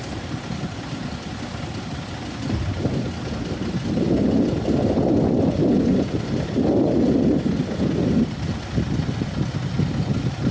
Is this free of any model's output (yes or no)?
yes